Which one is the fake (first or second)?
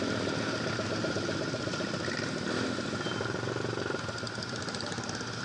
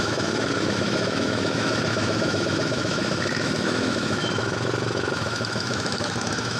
second